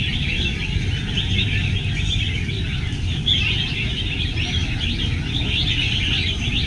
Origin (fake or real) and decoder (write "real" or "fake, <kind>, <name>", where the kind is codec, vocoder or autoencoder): real